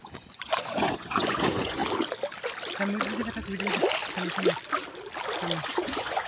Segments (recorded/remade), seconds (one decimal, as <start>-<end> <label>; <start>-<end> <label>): 0.0-1.8 remade; 1.8-5.6 recorded; 5.6-6.3 remade